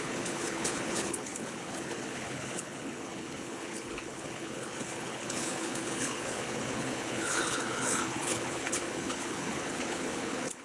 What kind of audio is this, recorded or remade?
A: remade